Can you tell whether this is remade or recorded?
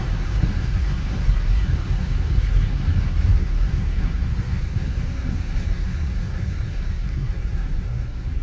remade